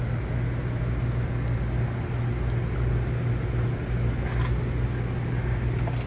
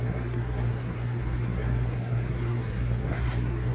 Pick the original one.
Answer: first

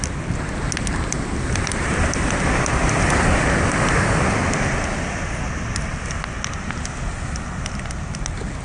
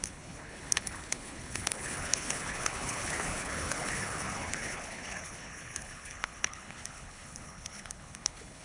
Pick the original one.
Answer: first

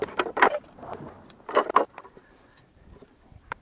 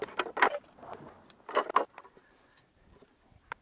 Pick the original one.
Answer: second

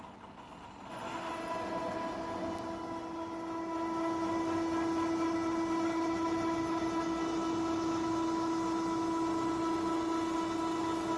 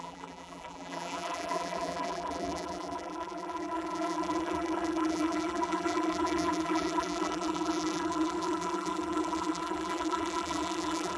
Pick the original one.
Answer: first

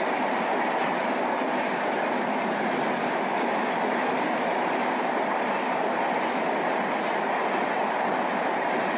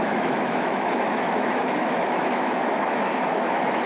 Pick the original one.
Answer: first